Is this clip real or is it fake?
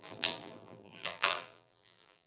fake